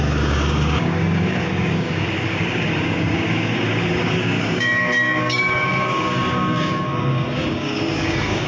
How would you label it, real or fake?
fake